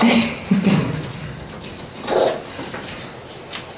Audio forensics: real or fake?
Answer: real